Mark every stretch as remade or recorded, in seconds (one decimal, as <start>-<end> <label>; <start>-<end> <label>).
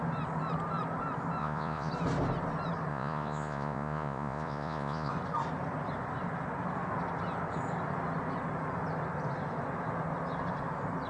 0.0-1.4 recorded; 1.4-1.9 remade; 1.9-2.9 recorded; 2.9-5.1 remade; 5.1-11.1 recorded